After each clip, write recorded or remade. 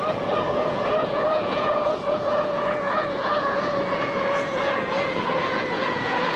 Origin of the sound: remade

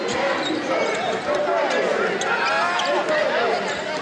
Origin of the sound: recorded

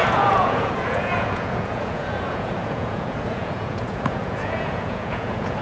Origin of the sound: remade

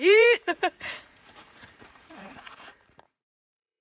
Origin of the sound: remade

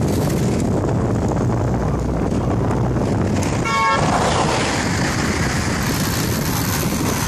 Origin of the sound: recorded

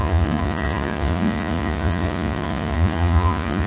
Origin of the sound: remade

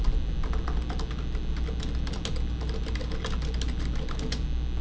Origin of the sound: recorded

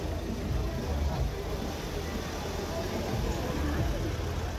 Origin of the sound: recorded